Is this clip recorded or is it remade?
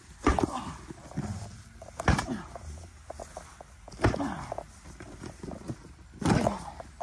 recorded